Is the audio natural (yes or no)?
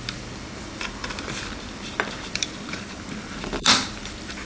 no